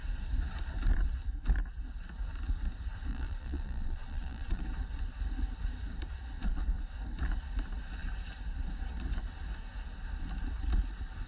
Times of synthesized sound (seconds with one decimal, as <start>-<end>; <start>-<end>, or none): 3.1-4.6